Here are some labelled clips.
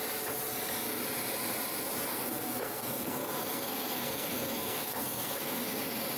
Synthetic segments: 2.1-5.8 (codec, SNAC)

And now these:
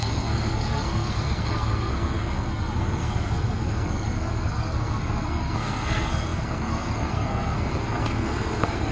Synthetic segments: 0.0-8.9 (codec, SNAC)